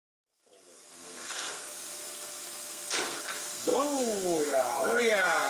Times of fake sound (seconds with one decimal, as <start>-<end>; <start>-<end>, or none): 0.0-5.5